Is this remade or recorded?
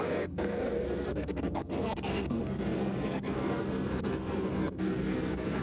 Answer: remade